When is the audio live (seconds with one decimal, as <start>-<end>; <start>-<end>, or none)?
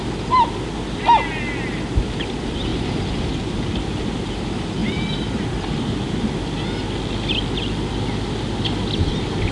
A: 0.0-9.5